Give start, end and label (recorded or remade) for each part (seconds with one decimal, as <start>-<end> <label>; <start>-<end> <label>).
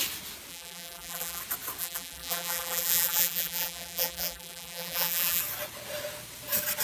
0.0-0.5 recorded; 0.5-1.4 remade; 1.4-1.8 recorded; 1.8-5.4 remade; 5.4-6.8 recorded